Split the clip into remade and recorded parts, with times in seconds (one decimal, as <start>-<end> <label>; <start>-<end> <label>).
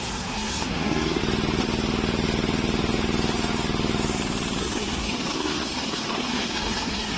0.0-1.2 remade; 1.2-4.6 recorded; 4.6-7.2 remade